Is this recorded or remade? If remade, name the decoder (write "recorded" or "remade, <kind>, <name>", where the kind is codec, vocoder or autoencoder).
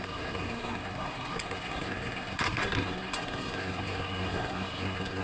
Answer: remade, codec, SNAC